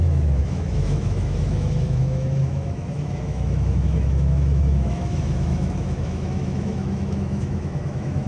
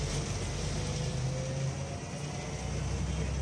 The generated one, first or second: first